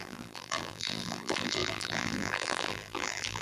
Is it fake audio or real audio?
fake